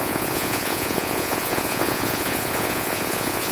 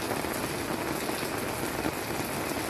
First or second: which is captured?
second